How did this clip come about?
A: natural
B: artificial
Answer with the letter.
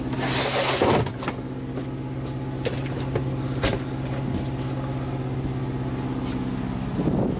A